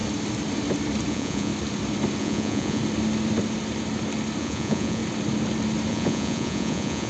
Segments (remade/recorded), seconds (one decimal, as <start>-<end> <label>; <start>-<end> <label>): 0.0-1.1 recorded; 1.1-1.5 remade; 1.5-2.2 recorded; 2.2-2.8 remade; 2.8-4.4 recorded; 4.4-5.0 remade; 5.0-5.9 recorded; 5.9-7.1 remade

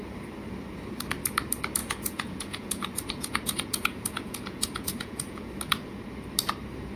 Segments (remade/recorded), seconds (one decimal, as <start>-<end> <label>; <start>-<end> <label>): 0.0-1.8 recorded; 1.8-5.5 remade; 5.5-7.0 recorded

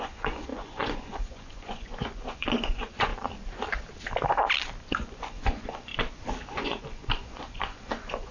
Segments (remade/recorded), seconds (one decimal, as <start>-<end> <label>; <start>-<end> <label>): 0.0-3.1 remade; 3.1-4.8 recorded; 4.8-5.9 remade; 5.9-6.5 recorded; 6.5-8.3 remade

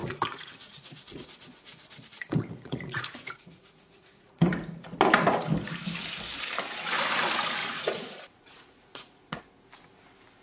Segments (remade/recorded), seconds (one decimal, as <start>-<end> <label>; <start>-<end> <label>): 0.0-4.5 remade; 4.5-7.6 recorded; 7.6-9.4 remade; 9.4-10.4 recorded

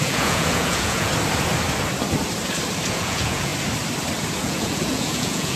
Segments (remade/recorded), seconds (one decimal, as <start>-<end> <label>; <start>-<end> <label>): 0.0-1.1 remade; 1.1-2.9 recorded; 2.9-3.5 remade; 3.5-4.4 recorded; 4.4-5.6 remade

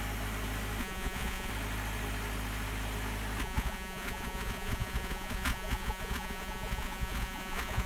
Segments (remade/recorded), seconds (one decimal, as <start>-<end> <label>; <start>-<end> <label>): 0.0-0.8 recorded; 0.8-1.5 remade; 1.5-3.4 recorded; 3.4-7.9 remade